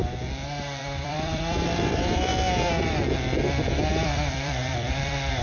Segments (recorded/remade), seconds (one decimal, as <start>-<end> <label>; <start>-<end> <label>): 0.0-0.8 recorded; 0.8-2.3 remade; 2.3-3.9 recorded; 3.9-5.4 remade